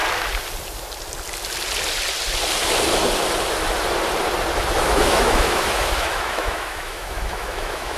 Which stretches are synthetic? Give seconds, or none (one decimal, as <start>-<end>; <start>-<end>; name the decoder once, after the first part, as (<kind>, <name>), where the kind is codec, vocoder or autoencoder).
4.8-8.0 (autoencoder, DAC-VAE)